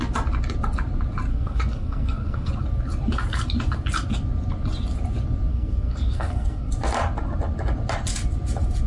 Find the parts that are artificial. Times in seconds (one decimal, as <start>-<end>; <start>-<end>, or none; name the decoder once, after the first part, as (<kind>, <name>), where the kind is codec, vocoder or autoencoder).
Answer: 1.3-2.5 (codec, SNAC); 5.5-6.7